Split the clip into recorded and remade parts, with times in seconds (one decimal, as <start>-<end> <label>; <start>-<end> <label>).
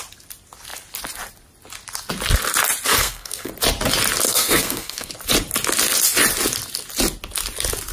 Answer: 0.0-2.9 recorded; 2.9-3.5 remade; 3.5-4.3 recorded; 4.3-5.1 remade; 5.1-7.9 recorded